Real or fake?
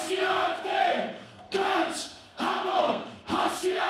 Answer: fake